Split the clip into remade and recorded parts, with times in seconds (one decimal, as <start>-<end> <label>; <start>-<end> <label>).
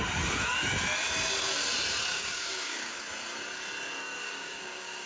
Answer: 0.0-2.1 recorded; 2.1-3.0 remade; 3.0-4.2 recorded; 4.2-5.1 remade